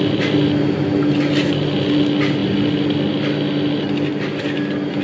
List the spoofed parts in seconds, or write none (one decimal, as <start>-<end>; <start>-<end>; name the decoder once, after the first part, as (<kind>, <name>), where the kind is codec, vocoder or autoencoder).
none